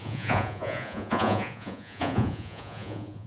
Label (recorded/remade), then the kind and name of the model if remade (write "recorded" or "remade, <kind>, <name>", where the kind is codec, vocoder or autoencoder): remade, vocoder, Vocos